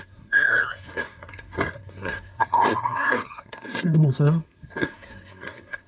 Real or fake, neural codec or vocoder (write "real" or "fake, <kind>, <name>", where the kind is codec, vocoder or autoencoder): fake, codec, SNAC